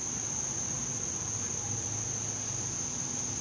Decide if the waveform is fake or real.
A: real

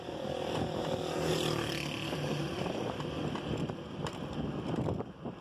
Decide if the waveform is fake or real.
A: real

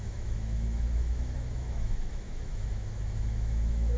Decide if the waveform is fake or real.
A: fake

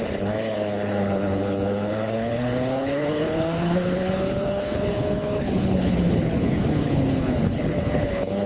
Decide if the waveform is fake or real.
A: fake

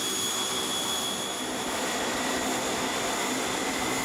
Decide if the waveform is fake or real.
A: real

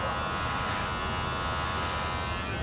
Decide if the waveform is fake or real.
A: real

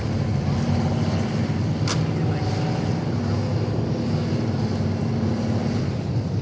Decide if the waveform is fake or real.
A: real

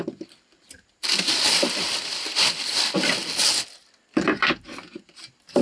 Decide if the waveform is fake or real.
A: real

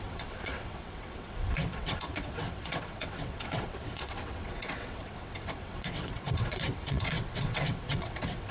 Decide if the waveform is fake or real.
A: fake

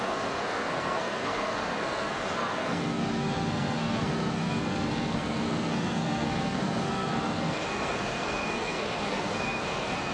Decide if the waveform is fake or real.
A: fake